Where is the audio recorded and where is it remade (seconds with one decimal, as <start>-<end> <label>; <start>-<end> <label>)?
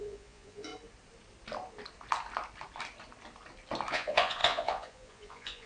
0.0-0.7 remade; 0.7-3.9 recorded; 3.9-5.7 remade